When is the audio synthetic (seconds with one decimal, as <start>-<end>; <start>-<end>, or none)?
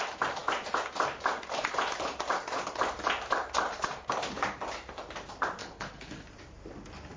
5.6-6.2